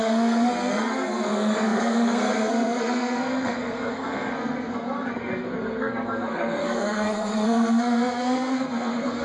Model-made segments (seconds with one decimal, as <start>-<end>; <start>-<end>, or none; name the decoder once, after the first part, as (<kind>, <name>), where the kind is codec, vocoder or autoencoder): 0.0-9.2 (codec, SNAC)